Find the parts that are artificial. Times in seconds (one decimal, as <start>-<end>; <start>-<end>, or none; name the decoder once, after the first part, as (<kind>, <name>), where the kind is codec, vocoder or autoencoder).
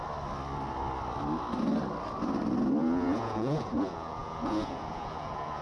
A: 2.8-5.6 (vocoder, Vocos)